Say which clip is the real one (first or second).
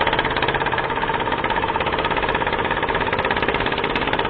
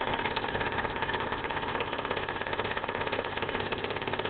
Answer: first